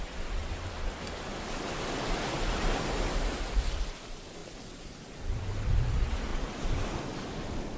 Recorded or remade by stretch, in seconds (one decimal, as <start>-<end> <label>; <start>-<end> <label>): 0.0-4.4 recorded; 4.4-5.4 remade; 5.4-7.8 recorded